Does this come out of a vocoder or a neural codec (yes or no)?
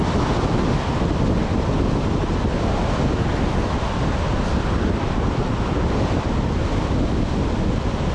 no